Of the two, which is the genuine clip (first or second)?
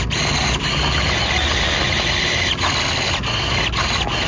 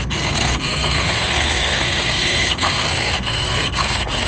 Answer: first